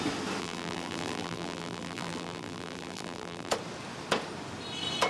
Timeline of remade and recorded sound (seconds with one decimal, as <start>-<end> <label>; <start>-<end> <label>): 0.0-0.4 recorded; 0.4-3.5 remade; 3.5-5.1 recorded